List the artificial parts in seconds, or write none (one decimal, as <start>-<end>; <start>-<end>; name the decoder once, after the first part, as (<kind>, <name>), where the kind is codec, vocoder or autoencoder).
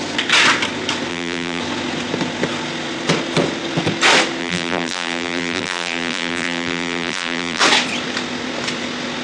1.1-1.6 (vocoder, BigVGAN v2); 4.4-7.6